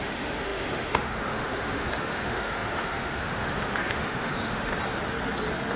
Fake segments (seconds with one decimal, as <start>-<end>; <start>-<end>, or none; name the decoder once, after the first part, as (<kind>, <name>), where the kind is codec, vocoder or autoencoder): 0.0-4.7 (autoencoder, DAC-VAE)